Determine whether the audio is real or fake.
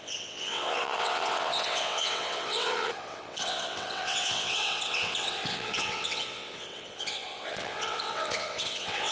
fake